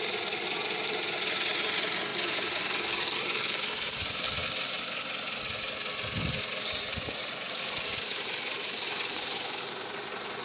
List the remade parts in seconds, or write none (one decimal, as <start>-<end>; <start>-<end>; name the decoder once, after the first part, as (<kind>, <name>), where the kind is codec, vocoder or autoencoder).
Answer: none